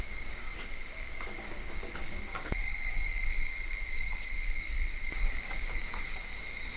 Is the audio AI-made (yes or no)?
yes